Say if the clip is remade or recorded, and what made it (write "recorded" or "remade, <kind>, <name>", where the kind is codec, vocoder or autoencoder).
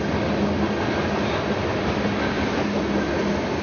recorded